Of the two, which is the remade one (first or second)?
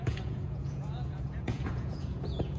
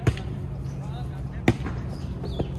first